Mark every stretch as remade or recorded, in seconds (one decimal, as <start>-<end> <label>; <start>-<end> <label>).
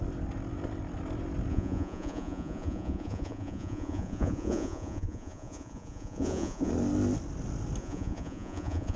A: 0.0-1.5 recorded; 1.5-6.7 remade; 6.7-7.8 recorded; 7.8-9.0 remade